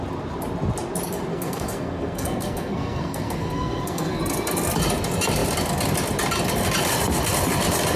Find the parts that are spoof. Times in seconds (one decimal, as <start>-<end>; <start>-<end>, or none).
1.3-4.2